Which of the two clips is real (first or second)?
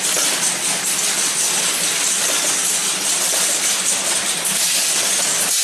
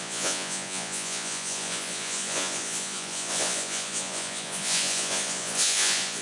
first